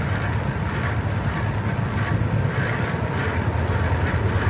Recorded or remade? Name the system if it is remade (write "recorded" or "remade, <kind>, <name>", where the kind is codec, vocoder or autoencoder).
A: recorded